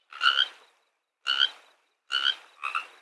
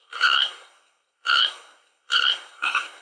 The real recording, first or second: first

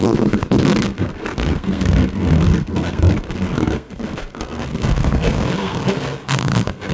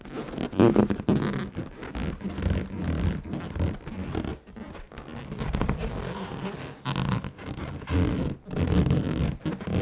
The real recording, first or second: second